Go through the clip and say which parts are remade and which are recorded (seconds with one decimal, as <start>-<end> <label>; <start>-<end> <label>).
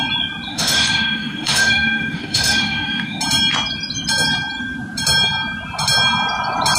0.0-0.5 recorded; 0.5-3.2 remade; 3.2-6.8 recorded